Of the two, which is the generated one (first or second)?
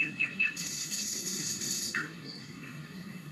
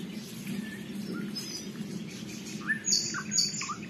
first